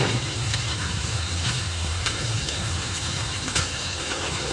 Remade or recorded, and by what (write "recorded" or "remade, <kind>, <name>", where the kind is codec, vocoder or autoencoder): remade, codec, SNAC